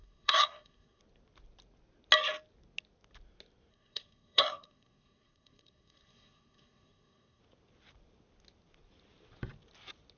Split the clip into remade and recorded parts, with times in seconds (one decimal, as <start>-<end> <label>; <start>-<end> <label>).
0.0-1.0 remade; 1.0-3.7 recorded; 3.7-7.4 remade; 7.4-10.2 recorded